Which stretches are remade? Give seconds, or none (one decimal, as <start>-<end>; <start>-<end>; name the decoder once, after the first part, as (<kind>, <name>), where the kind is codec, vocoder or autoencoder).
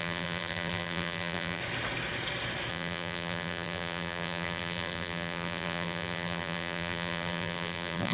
0.0-1.6 (vocoder, BigVGAN v2); 2.7-8.1